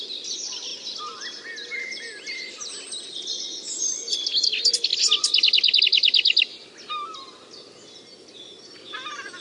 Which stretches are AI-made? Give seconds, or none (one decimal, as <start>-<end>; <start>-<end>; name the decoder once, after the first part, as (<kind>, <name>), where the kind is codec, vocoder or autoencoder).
none